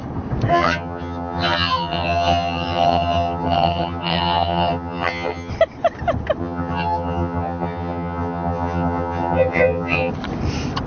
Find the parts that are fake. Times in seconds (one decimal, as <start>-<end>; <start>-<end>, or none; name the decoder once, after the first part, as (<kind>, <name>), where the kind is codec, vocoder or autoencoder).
0.5-5.5 (vocoder, HiFi-GAN); 6.4-10.1